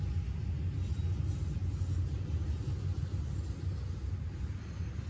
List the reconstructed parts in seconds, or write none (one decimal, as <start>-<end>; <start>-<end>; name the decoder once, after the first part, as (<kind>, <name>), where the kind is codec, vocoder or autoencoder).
none